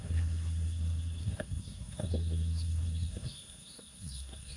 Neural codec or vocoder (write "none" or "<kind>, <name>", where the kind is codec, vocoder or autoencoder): codec, SNAC